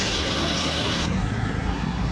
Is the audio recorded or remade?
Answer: remade